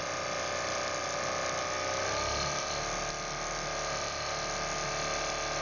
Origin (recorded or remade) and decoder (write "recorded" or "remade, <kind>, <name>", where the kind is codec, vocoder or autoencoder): recorded